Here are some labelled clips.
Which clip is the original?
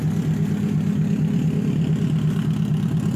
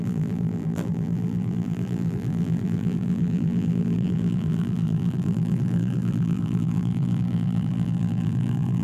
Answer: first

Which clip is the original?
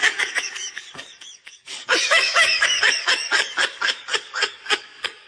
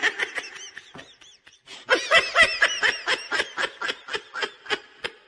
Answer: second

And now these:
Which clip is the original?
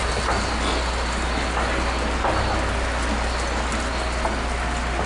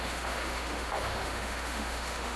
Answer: first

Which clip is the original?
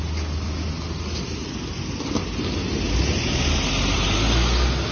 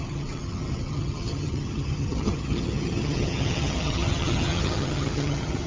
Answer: first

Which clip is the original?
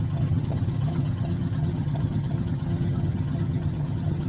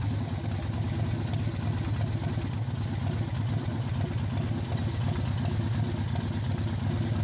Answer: second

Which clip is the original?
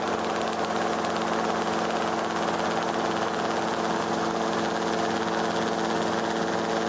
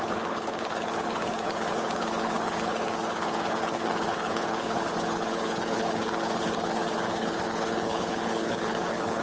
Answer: first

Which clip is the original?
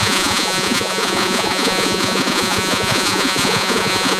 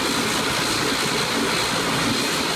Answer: second